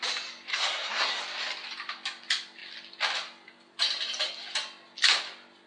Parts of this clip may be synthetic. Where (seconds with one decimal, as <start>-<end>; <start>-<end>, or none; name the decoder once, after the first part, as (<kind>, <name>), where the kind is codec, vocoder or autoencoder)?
0.5-1.2 (codec, SNAC)